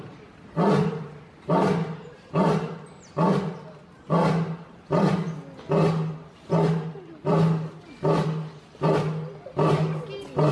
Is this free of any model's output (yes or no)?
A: yes